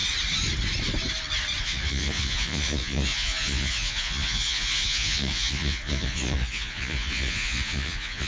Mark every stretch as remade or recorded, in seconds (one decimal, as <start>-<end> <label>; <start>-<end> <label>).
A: 0.0-1.6 recorded; 1.6-8.3 remade